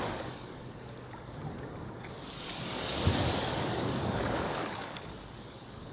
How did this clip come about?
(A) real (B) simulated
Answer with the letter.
B